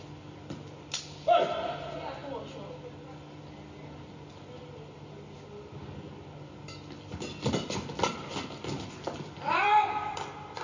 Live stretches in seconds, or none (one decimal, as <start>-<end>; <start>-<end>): 0.0-10.6